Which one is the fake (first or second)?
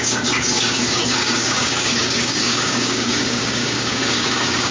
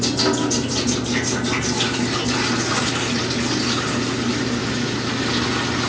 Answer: first